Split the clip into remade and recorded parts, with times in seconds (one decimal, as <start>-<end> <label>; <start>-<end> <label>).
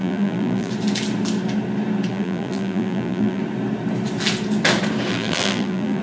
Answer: 0.0-0.7 remade; 0.7-2.1 recorded; 2.1-3.4 remade; 3.4-5.1 recorded; 5.1-6.0 remade